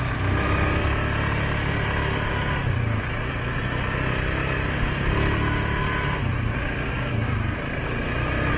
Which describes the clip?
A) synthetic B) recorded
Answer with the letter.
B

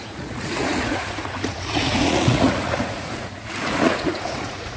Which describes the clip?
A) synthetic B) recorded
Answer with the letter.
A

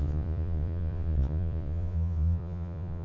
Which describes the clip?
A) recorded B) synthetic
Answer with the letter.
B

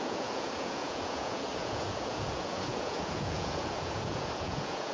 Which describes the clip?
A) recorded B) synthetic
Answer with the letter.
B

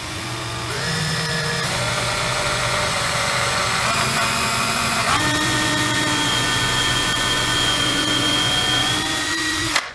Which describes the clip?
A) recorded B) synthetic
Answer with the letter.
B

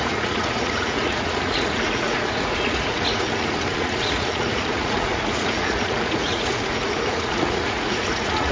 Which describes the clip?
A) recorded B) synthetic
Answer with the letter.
B